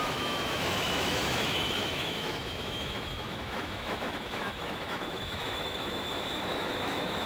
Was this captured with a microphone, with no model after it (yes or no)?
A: no